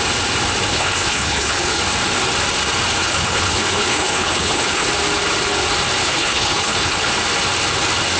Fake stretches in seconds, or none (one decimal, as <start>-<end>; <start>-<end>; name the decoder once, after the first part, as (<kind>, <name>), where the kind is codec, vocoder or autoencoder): 0.7-1.8 (codec, HILCodec); 3.0-4.9; 6.0-7.1